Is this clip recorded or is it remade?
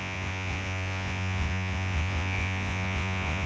remade